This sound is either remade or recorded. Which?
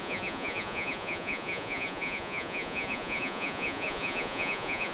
remade